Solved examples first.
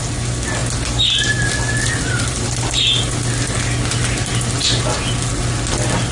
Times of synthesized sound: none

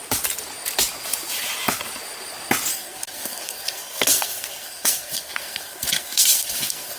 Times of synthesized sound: 2.7-7.0

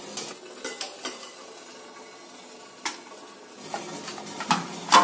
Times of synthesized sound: none

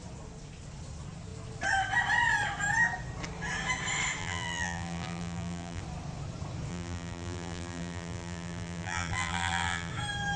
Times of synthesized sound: 4.2-5.8; 6.7-9.9

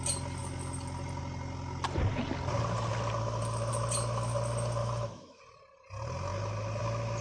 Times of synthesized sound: 4.8-5.4

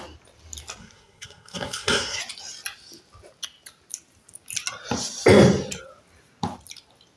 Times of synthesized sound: 0.8-2.2

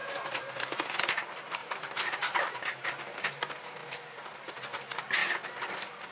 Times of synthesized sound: 1.1-3.8; 4.5-5.2

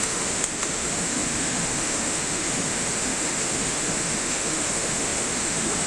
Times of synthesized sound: 0.0-5.9